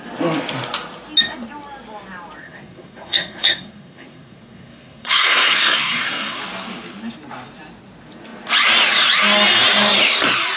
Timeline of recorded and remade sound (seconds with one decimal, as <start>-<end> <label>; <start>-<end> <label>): 0.0-2.4 recorded; 2.4-6.4 remade; 6.4-10.6 recorded